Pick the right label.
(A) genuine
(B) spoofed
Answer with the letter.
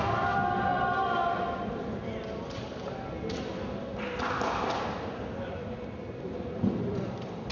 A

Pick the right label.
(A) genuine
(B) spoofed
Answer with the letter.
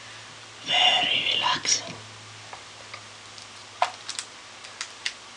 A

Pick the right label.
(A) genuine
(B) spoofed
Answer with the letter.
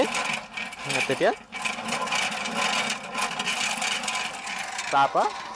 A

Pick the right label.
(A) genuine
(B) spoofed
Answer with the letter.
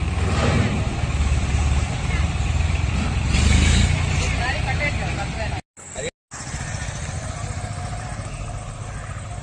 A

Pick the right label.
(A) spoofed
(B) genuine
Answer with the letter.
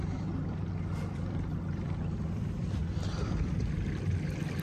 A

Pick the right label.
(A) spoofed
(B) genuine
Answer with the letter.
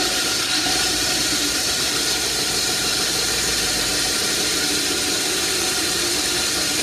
A